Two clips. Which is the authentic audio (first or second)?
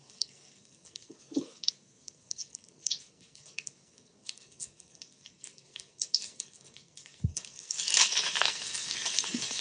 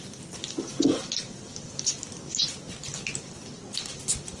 second